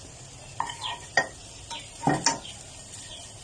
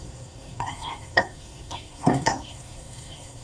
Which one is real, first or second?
first